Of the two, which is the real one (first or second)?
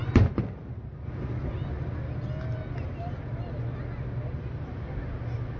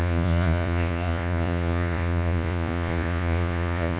first